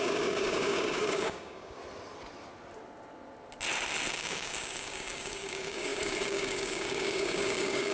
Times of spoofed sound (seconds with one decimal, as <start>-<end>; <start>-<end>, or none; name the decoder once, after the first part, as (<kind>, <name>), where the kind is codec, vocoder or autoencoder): 0.0-1.8 (codec, DAC); 4.1-7.9